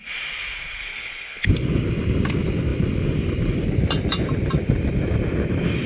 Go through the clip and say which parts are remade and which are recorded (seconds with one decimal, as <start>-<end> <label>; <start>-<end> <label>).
0.0-0.8 recorded; 0.8-1.5 remade; 1.5-5.9 recorded